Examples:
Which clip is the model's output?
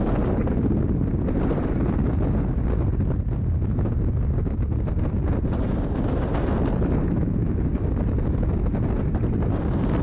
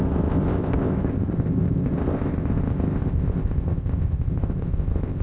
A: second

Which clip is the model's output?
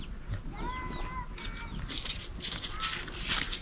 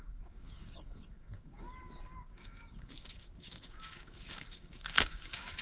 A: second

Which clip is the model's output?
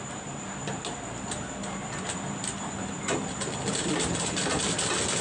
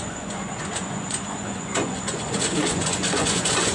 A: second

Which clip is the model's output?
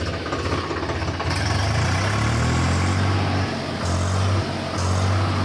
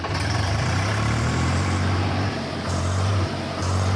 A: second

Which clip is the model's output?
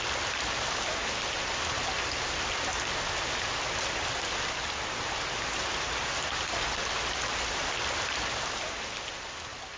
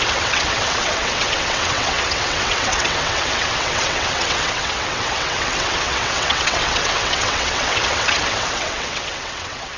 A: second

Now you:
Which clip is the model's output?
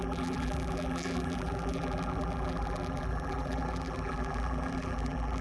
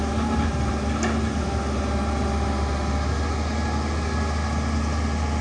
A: first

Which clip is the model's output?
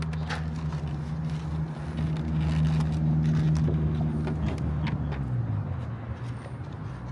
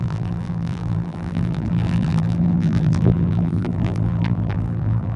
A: second